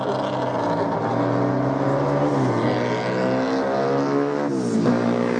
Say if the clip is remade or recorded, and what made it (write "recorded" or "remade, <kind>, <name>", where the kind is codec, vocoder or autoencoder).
recorded